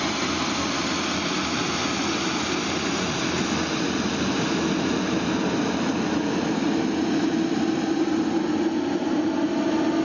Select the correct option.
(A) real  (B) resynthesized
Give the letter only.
A